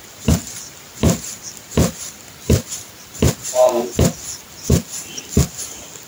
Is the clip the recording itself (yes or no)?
yes